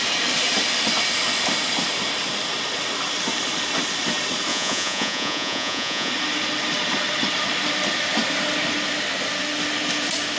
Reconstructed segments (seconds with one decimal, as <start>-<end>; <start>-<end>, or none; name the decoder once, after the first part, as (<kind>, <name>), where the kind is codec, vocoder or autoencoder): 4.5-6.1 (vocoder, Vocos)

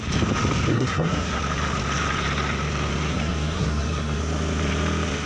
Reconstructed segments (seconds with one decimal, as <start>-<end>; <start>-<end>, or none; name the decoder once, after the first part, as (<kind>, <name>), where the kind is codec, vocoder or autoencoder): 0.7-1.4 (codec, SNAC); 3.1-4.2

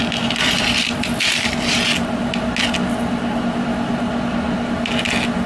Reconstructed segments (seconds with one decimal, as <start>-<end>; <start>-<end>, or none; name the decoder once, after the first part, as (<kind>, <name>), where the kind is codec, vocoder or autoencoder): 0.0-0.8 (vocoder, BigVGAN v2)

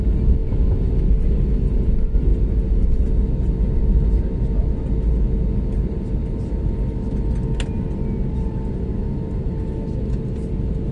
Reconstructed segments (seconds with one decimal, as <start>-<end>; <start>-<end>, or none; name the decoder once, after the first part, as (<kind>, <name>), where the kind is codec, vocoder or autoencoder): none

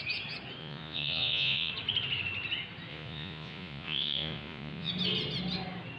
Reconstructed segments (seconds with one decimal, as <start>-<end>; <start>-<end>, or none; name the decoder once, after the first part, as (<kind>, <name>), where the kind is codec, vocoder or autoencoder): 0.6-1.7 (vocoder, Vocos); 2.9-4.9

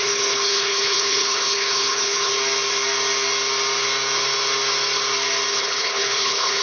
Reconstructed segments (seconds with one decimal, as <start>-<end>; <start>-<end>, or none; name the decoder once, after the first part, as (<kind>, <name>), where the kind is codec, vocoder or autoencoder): 0.0-2.3 (codec, HILCodec); 5.5-6.6